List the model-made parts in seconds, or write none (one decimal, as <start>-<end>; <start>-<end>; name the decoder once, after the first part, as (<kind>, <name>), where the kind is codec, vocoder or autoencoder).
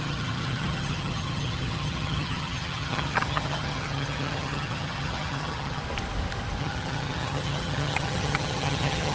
0.0-5.8 (vocoder, HiFi-GAN); 6.6-9.1